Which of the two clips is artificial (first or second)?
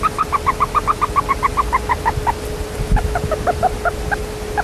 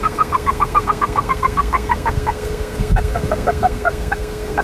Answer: second